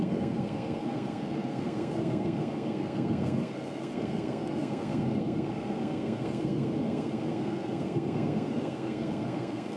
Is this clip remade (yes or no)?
yes